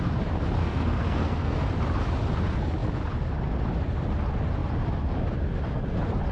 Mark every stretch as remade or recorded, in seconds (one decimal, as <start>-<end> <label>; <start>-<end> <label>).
0.0-0.6 recorded; 0.6-1.7 remade; 1.7-6.3 recorded

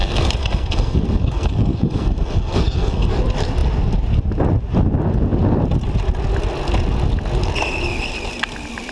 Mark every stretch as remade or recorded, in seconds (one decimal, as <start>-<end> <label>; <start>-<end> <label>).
0.0-3.1 remade; 3.1-8.9 recorded

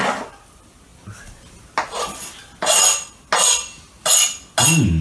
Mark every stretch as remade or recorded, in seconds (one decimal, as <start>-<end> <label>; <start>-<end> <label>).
0.0-5.0 recorded